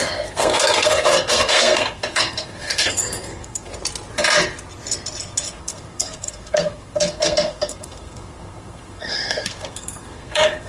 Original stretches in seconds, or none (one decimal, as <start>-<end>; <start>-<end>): 3.7-5.6